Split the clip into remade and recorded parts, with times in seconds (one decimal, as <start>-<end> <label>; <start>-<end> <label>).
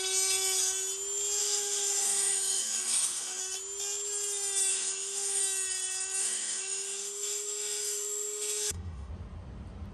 0.0-1.4 recorded; 1.4-3.4 remade; 3.4-4.7 recorded; 4.7-5.4 remade; 5.4-6.2 recorded; 6.2-9.1 remade; 9.1-9.9 recorded